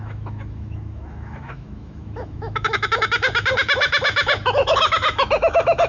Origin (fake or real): fake